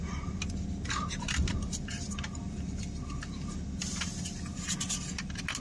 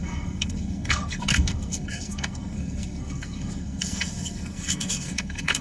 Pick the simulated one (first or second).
second